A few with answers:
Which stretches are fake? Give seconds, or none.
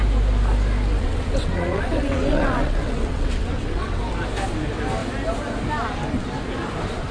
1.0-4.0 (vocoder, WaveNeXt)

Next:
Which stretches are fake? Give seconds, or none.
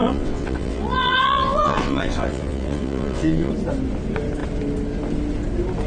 0.0-3.5 (vocoder, WaveNeXt)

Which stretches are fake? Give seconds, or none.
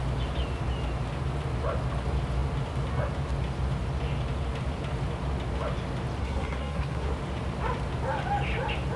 6.2-7.1 (codec, SNAC)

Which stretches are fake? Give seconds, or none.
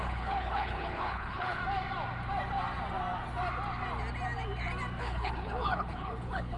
0.0-1.6 (codec, HILCodec); 5.0-6.6